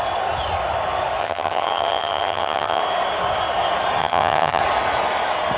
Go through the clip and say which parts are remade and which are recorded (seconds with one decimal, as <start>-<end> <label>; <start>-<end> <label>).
0.0-1.2 recorded; 1.2-2.8 remade; 2.8-4.0 recorded; 4.0-4.6 remade; 4.6-5.6 recorded